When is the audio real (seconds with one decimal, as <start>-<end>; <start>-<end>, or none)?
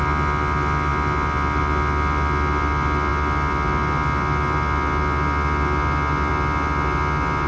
0.0-7.5